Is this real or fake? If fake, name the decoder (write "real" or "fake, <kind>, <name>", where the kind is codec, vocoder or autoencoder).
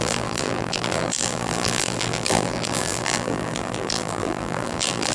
fake, vocoder, BigVGAN v2